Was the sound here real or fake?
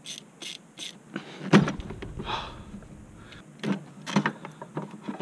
real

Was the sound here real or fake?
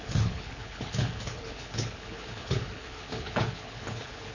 fake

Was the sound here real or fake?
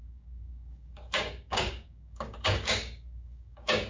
fake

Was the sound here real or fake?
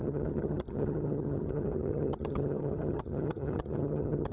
fake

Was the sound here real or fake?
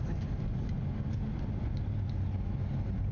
real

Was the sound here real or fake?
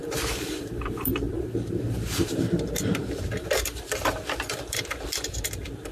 fake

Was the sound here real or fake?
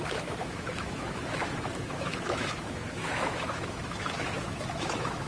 fake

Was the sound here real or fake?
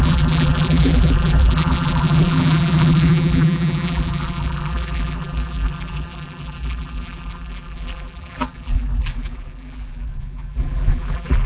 fake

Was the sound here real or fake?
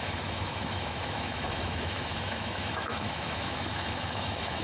fake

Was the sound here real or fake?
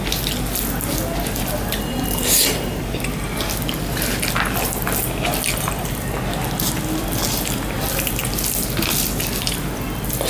real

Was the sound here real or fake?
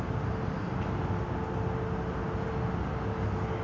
real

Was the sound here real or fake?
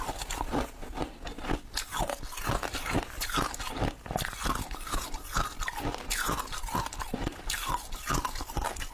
real